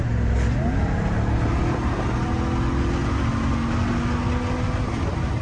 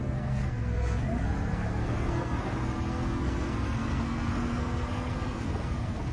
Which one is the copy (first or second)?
second